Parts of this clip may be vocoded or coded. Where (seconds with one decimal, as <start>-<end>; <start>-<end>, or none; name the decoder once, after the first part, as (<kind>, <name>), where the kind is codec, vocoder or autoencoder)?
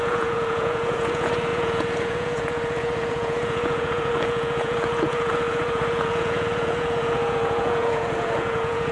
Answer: 0.0-8.9 (vocoder, Vocos)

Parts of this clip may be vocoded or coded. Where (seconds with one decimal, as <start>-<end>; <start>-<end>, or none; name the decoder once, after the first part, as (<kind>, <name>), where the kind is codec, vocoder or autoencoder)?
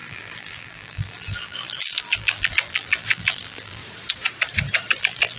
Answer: 0.0-3.8 (vocoder, BigVGAN v2); 5.0-5.4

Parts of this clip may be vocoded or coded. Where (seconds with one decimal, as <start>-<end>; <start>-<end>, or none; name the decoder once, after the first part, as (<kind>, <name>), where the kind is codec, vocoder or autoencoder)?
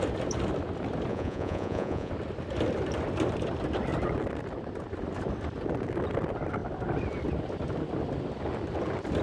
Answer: 1.1-2.1 (vocoder, Vocos)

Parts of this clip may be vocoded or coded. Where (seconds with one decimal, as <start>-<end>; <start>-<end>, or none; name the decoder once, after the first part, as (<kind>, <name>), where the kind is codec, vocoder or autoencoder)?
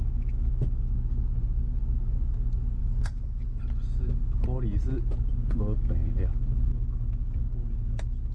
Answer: 2.8-3.6 (codec, DAC)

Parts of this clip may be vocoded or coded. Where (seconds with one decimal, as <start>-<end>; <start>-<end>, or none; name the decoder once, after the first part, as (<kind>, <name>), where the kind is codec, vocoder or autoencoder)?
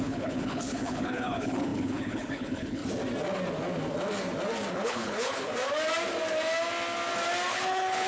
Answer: 0.0-2.8 (codec, HILCodec); 4.7-5.5; 7.5-8.1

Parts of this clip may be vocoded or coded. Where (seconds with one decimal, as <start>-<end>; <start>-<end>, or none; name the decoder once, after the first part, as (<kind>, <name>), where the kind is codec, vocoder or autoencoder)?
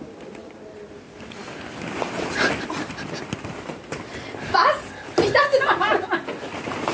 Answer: none